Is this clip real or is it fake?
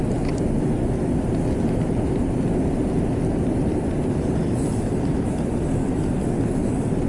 real